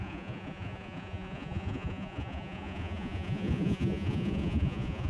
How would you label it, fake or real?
fake